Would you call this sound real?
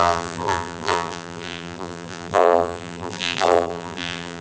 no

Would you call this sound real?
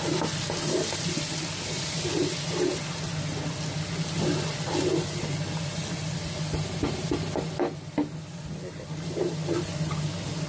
yes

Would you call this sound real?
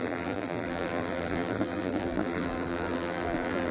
no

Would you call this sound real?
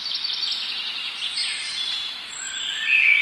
yes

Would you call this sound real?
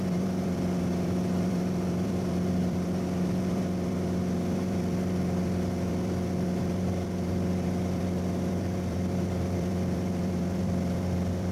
no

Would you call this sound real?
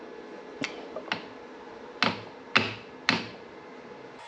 yes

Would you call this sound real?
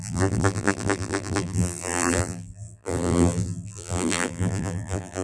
no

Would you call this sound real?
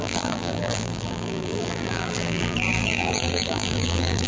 no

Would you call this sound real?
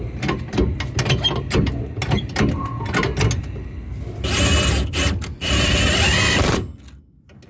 yes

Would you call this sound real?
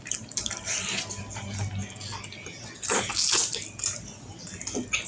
yes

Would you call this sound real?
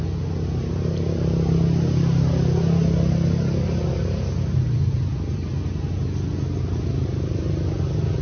yes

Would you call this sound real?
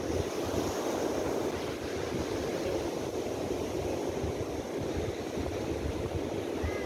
yes